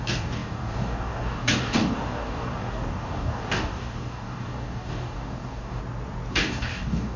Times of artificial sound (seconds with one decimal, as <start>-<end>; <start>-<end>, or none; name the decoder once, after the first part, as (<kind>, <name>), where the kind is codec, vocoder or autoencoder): 0.0-5.8 (codec, DAC); 6.3-7.2